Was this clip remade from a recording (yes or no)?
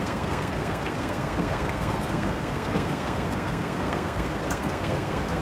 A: yes